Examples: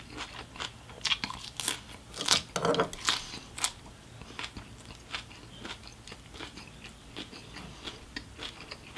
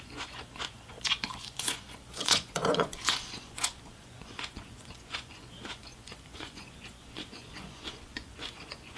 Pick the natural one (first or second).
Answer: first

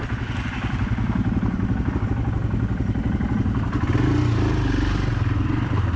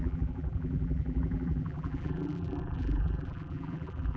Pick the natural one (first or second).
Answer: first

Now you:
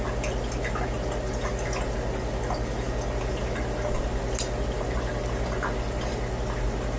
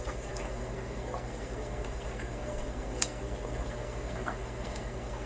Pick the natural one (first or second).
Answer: first